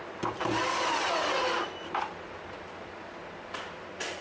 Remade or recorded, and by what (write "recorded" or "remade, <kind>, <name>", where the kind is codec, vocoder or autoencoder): recorded